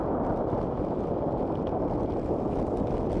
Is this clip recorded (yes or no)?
yes